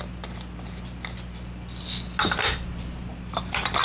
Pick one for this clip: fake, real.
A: real